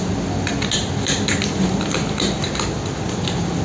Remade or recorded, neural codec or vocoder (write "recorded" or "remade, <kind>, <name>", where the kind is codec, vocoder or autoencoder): recorded